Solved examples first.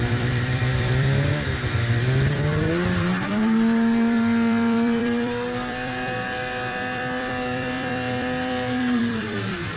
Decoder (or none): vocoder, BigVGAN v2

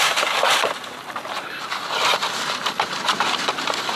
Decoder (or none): vocoder, BigVGAN v2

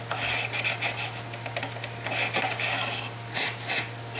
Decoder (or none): none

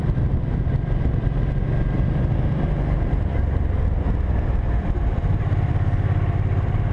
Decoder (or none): vocoder, BigVGAN v2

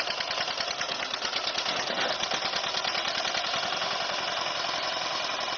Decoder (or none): vocoder, BigVGAN v2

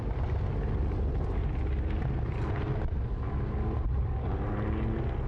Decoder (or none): none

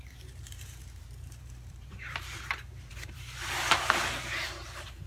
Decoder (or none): vocoder, BigVGAN v2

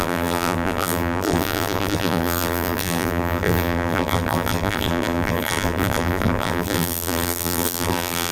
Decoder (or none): vocoder, BigVGAN v2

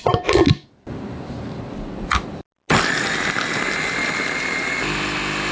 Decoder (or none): none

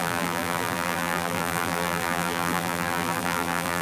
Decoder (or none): vocoder, BigVGAN v2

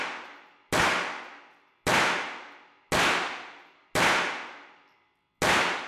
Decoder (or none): none